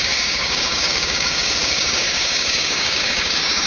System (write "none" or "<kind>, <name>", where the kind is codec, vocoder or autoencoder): codec, DAC